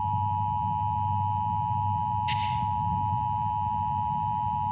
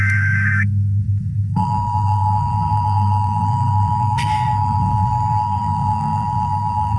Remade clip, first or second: second